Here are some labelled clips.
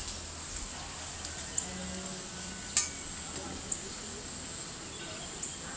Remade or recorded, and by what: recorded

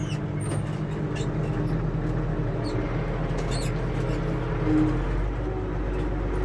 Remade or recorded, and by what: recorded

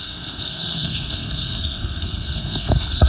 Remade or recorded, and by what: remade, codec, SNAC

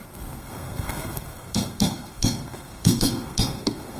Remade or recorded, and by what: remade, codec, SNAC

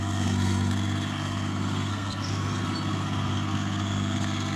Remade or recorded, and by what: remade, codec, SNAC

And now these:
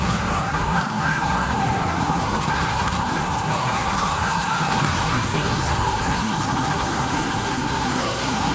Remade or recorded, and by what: remade, codec, SNAC